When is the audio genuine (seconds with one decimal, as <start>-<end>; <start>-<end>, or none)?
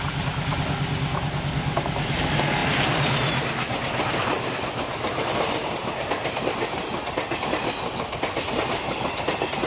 0.0-9.7